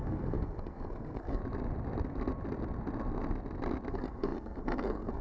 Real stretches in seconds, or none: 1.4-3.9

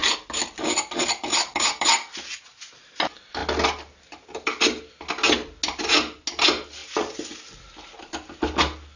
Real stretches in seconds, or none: 0.0-9.0